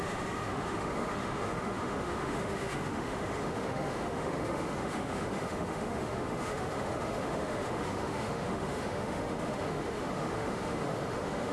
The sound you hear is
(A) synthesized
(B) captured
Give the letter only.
A